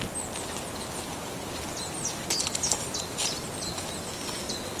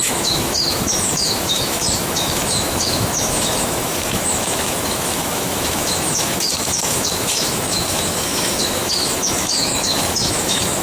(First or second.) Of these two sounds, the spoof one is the second